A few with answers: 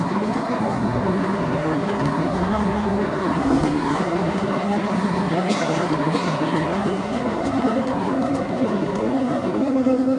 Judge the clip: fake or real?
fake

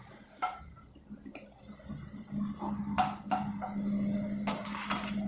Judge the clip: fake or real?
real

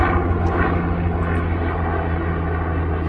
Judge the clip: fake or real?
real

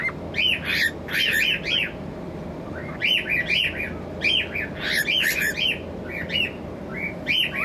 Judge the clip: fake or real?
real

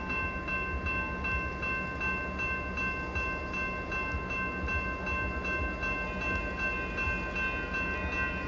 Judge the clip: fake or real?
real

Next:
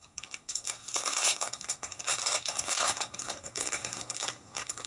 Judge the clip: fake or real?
fake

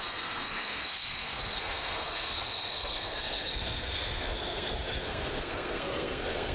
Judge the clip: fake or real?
fake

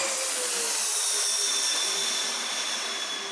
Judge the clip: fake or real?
real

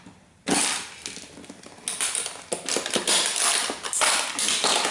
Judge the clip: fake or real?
real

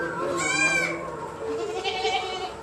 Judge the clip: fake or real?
real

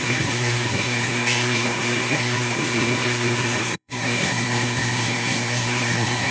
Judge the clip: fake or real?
fake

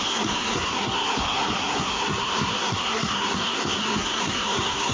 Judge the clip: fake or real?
fake